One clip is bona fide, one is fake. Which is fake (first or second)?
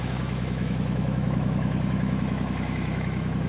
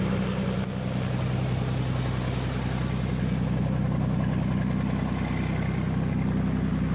first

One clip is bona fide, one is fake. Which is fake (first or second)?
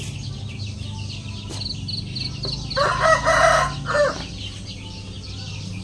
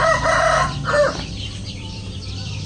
second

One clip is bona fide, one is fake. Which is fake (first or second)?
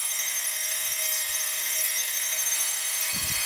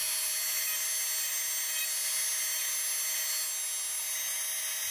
first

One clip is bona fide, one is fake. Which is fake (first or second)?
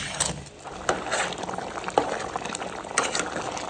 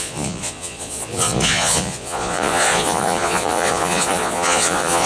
second